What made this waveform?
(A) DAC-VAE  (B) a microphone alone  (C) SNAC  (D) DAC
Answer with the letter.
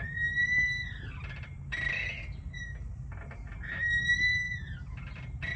B